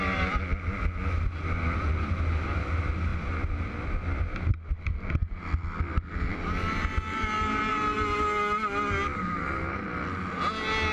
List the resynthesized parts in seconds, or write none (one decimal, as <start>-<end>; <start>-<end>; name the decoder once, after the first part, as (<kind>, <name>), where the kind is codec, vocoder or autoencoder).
none